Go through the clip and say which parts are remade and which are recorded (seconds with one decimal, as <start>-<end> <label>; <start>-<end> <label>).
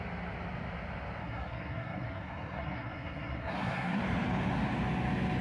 0.0-1.2 recorded; 1.2-4.0 remade; 4.0-5.4 recorded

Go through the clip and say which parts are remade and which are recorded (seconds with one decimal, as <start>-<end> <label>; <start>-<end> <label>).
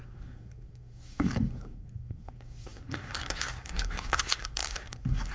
0.0-5.3 remade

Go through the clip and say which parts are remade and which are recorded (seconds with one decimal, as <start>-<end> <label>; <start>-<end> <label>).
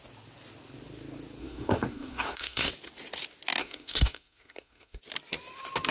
0.0-1.4 recorded; 1.4-2.7 remade; 2.7-3.6 recorded; 3.6-5.0 remade; 5.0-5.9 recorded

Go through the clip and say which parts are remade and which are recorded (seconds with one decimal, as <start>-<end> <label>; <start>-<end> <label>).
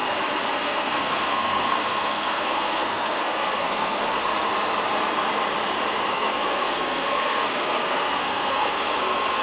0.0-0.5 recorded; 0.5-4.0 remade; 4.0-6.1 recorded; 6.1-9.4 remade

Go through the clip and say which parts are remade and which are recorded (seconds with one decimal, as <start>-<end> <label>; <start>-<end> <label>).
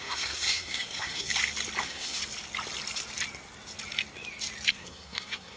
0.0-1.3 remade; 1.3-1.8 recorded; 1.8-2.2 remade; 2.2-4.7 recorded; 4.7-5.6 remade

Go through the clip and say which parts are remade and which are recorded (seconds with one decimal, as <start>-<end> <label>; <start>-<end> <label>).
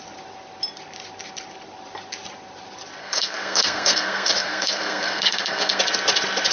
0.0-3.0 recorded; 3.0-5.8 remade; 5.8-6.5 recorded